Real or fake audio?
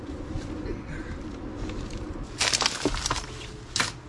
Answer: real